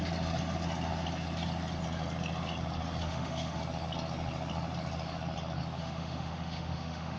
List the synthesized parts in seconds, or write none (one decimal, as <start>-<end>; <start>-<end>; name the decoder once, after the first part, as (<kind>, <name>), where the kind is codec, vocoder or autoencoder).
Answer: 3.0-3.6 (autoencoder, DAC-VAE); 5.8-7.2